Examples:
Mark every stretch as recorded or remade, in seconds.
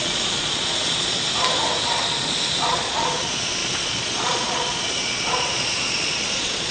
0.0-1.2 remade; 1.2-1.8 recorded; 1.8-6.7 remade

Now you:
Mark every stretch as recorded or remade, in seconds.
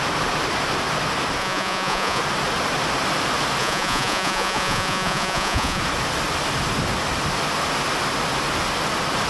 0.0-1.4 recorded; 1.4-2.2 remade; 2.2-3.6 recorded; 3.6-5.8 remade; 5.8-9.3 recorded